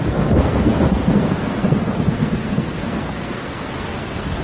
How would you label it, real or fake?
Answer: fake